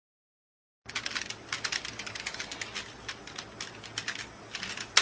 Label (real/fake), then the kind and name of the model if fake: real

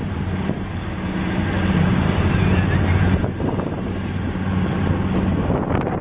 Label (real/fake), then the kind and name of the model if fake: fake, vocoder, BigVGAN v2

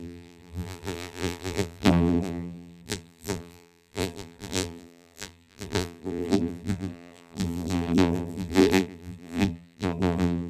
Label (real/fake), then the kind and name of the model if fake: fake, vocoder, BigVGAN v2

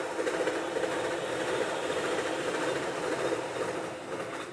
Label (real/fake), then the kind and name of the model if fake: fake, vocoder, BigVGAN v2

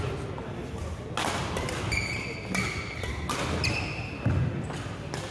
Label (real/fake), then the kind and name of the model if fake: real